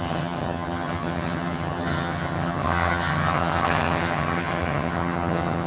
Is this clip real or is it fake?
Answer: fake